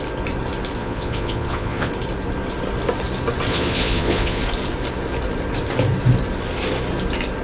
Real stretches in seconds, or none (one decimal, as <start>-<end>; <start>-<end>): 0.0-0.8; 1.9-3.5; 4.4-7.4